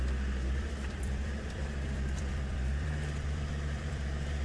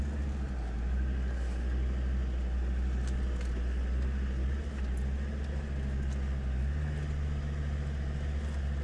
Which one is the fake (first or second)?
first